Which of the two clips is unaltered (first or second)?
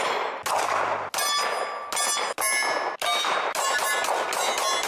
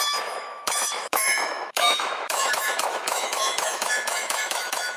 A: first